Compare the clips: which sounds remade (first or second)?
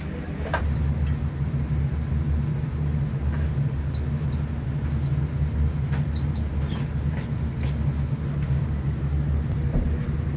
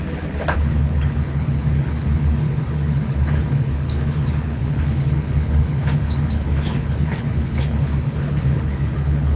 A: second